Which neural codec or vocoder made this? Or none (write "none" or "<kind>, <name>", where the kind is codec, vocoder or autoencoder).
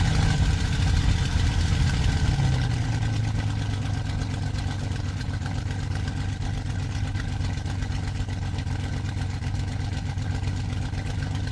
none